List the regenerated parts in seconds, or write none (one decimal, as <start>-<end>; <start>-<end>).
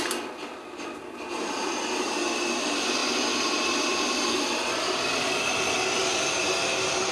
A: none